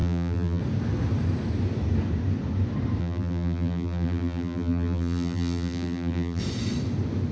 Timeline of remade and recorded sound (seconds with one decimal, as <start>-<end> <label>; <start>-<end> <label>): 0.0-0.6 remade; 0.6-3.0 recorded; 3.0-6.4 remade; 6.4-7.3 recorded

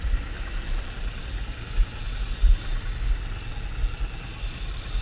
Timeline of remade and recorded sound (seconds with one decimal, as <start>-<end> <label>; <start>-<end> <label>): 0.0-4.3 recorded; 4.3-5.0 remade

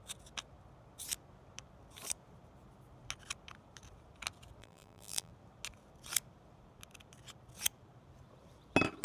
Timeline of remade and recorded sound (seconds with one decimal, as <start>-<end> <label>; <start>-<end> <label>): 0.0-4.6 recorded; 4.6-5.3 remade; 5.3-9.0 recorded

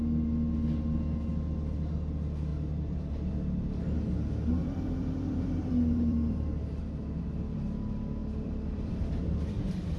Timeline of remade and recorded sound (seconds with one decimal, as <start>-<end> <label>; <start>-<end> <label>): 0.0-2.5 recorded; 2.5-3.3 remade; 3.3-4.6 recorded; 4.6-6.8 remade; 6.8-8.2 recorded; 8.2-8.9 remade; 8.9-10.0 recorded

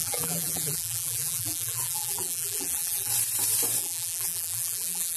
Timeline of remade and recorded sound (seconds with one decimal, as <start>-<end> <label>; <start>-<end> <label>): 0.0-3.1 remade; 3.1-3.8 recorded; 3.8-5.2 remade

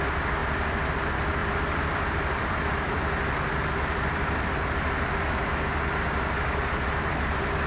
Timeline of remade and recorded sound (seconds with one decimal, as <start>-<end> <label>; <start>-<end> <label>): 0.0-1.4 recorded; 1.4-6.0 remade; 6.0-7.7 recorded

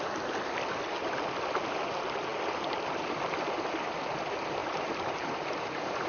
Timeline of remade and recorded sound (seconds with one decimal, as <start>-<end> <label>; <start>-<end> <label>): 0.0-4.6 recorded; 4.6-6.1 remade

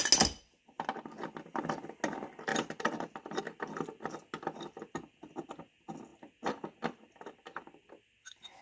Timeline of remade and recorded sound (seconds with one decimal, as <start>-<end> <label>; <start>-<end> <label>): 0.0-2.5 recorded; 2.5-3.4 remade; 3.4-8.6 recorded